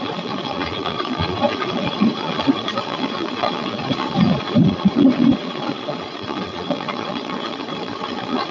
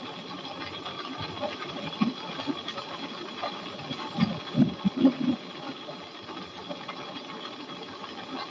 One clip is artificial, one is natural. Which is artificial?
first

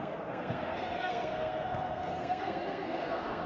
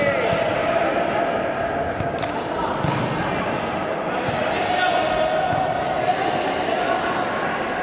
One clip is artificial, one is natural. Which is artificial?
first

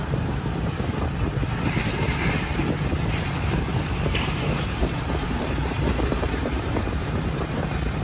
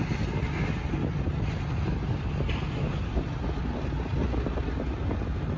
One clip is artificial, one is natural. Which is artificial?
first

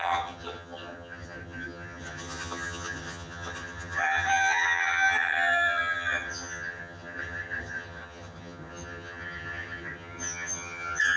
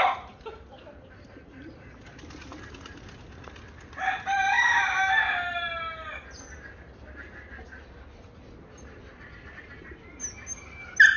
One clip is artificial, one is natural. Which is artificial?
first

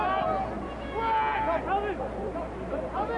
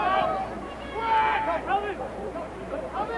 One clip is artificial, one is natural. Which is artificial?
second